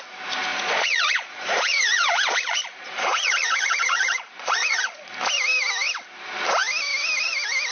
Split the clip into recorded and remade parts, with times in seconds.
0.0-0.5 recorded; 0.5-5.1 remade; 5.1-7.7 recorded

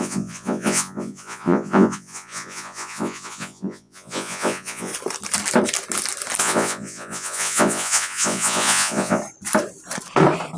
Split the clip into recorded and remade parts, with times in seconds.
0.0-4.9 remade; 4.9-6.4 recorded; 6.4-9.2 remade; 9.2-10.6 recorded

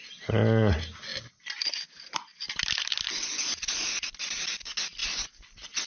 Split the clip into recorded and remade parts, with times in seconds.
0.0-5.9 recorded

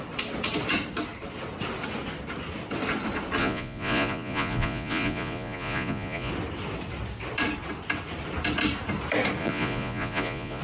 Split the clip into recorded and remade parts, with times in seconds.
0.0-3.4 recorded; 3.4-6.3 remade; 6.3-9.4 recorded; 9.4-10.6 remade

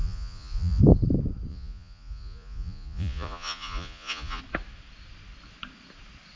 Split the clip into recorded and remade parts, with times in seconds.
0.0-0.8 remade; 0.8-1.5 recorded; 1.5-4.4 remade; 4.4-6.4 recorded